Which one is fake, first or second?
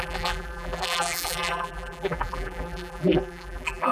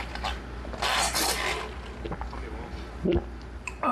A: first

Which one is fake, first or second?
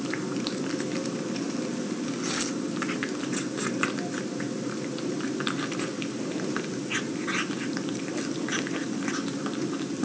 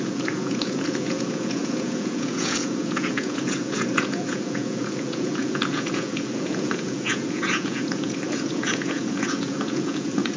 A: second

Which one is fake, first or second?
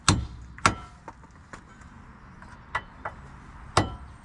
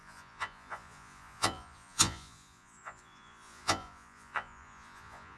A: second